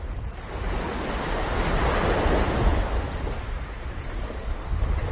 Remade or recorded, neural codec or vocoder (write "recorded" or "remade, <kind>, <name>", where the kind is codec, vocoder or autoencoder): recorded